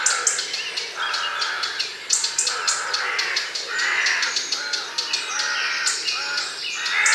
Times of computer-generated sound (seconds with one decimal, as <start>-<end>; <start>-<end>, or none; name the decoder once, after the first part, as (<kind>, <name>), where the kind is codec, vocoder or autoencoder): 1.3-4.6 (vocoder, BigVGAN v2)